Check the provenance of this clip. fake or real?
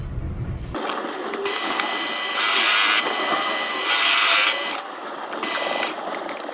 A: fake